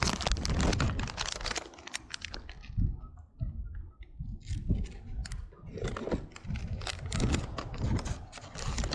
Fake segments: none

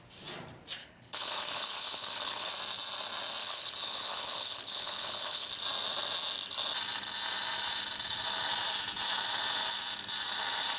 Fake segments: 0.8-2.5 (codec, HILCodec); 3.4-5.5

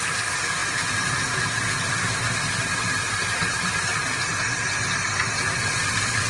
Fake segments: none

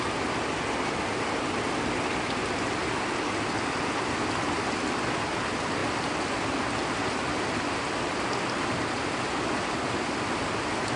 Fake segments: none

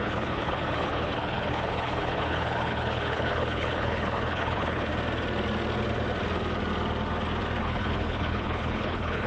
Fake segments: 0.0-4.9 (codec, HILCodec); 7.6-9.3